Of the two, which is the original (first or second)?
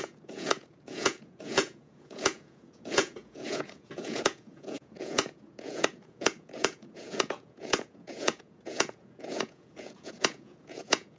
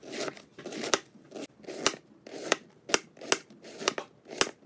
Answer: second